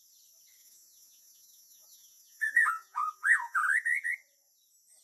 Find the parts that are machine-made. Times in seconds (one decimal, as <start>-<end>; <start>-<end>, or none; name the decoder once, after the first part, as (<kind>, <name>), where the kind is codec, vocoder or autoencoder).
0.6-3.6 (vocoder, Vocos)